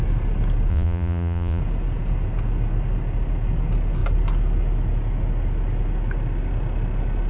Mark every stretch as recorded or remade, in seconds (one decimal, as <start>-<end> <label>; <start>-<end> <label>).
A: 0.0-0.7 recorded; 0.7-1.6 remade; 1.6-7.3 recorded